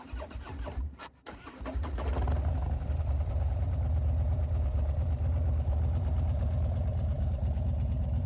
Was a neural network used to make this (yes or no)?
yes